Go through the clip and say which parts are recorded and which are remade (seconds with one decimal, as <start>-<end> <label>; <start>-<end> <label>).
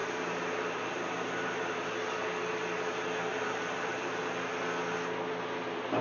0.0-1.9 remade; 1.9-3.3 recorded; 3.3-4.5 remade; 4.5-6.0 recorded